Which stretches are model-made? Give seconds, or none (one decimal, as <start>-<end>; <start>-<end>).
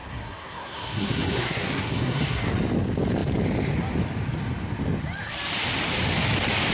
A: 0.0-2.4